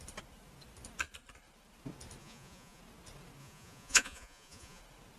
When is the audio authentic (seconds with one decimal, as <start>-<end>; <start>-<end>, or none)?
0.0-2.2; 2.8-3.4; 4.8-5.2

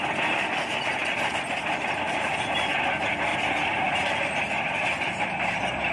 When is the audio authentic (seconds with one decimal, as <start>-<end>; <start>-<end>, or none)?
0.0-3.3; 4.2-5.9

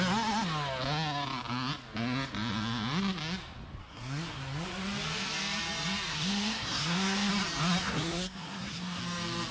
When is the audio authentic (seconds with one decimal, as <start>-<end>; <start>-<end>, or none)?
0.0-3.8; 4.4-6.1; 7.3-7.8; 9.0-9.5